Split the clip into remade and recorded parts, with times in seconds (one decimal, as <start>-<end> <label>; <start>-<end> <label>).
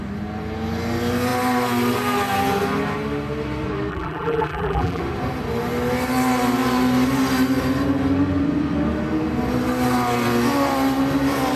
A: 0.0-3.9 recorded; 3.9-5.0 remade; 5.0-11.6 recorded